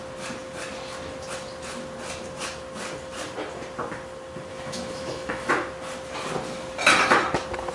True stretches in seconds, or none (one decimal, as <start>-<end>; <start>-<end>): 0.0-4.5; 5.5-7.7